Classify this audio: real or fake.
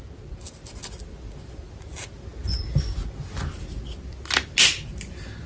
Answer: real